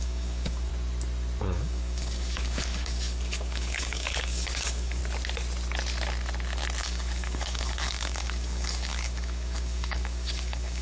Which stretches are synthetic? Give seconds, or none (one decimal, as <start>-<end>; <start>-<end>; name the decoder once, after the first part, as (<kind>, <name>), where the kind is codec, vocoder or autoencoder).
0.0-0.7 (codec, DAC); 1.4-5.0; 6.8-10.8